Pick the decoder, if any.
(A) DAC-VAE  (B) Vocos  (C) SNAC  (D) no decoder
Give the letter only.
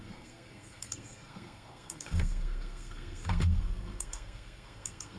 C